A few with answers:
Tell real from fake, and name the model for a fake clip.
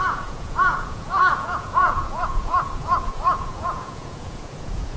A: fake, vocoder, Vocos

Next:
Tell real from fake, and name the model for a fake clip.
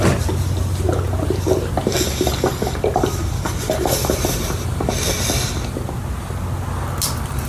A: real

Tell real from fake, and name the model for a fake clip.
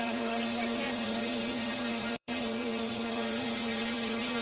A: fake, vocoder, Vocos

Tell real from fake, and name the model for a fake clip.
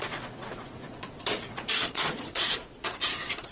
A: fake, vocoder, Vocos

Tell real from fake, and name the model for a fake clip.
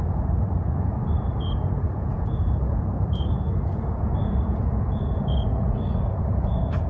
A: fake, vocoder, Vocos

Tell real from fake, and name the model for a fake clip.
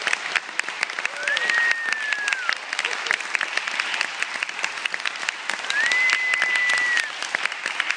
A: real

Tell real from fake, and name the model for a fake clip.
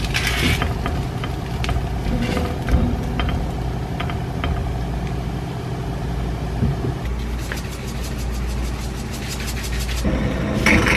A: real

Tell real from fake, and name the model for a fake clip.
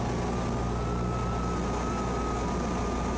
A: real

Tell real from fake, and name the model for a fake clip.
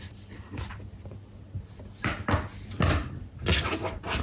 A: real